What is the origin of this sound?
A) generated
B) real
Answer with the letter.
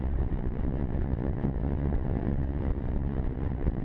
A